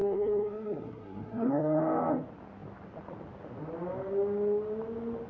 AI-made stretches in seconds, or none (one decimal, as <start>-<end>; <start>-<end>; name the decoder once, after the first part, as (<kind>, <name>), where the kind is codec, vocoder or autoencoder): 0.0-1.8 (codec, SNAC)